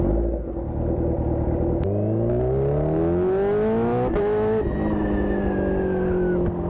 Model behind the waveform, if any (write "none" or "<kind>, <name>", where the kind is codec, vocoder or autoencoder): none